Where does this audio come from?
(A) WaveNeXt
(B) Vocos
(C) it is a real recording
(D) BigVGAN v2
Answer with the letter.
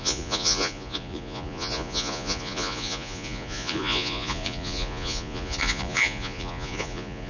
B